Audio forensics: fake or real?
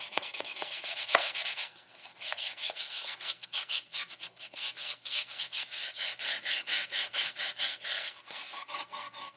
fake